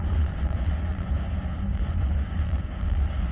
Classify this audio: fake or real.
fake